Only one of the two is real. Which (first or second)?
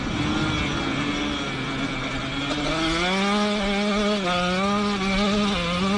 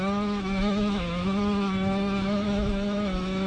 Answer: first